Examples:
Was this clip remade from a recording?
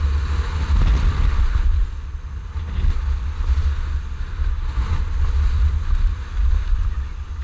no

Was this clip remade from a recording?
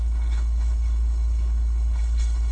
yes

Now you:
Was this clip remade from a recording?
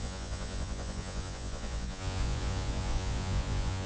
yes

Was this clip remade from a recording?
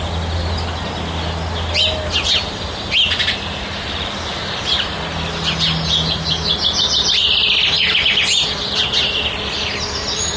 no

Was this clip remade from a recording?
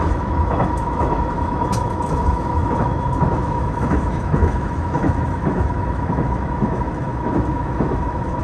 yes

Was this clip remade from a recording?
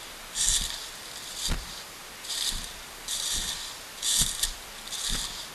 no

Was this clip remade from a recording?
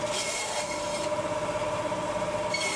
yes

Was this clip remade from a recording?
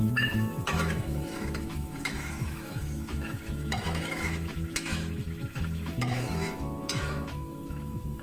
yes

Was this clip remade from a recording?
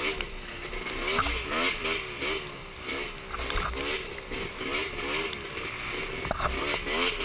no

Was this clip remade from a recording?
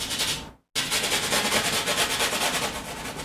no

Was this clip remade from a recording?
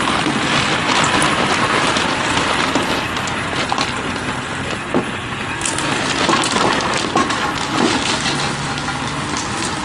no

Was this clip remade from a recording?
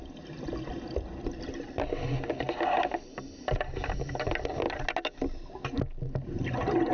no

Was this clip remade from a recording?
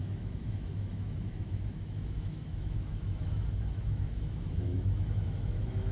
yes